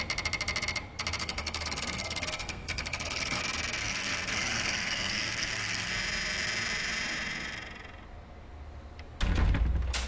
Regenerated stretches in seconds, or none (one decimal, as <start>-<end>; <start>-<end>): 1.2-3.4; 3.8-5.9